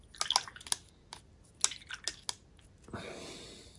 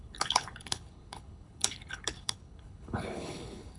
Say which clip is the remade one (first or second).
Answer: second